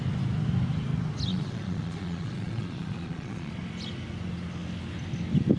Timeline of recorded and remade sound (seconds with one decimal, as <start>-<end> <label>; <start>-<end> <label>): 0.0-1.3 recorded; 1.3-3.5 remade; 3.5-5.6 recorded